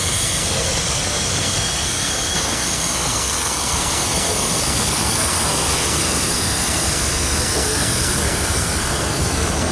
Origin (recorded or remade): remade